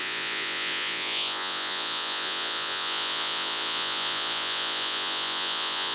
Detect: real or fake fake